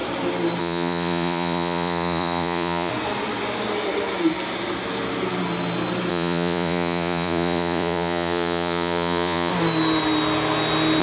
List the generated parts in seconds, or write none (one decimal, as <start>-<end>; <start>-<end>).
0.6-2.9; 6.1-9.5